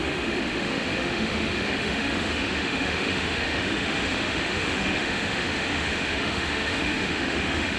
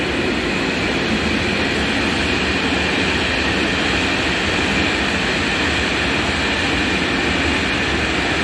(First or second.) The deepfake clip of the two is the first